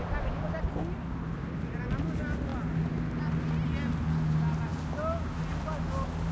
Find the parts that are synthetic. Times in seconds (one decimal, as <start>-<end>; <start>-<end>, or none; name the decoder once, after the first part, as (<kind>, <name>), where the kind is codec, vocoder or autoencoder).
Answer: none